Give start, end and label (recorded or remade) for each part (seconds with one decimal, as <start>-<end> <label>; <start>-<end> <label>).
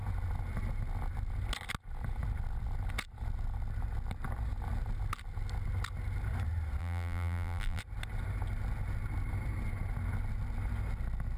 0.0-6.8 recorded; 6.8-7.8 remade; 7.8-11.4 recorded